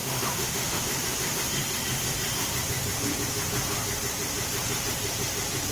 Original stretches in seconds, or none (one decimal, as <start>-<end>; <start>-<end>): 0.8-5.7